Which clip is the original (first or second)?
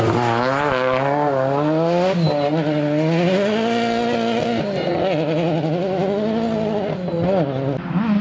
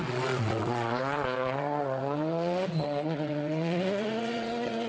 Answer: first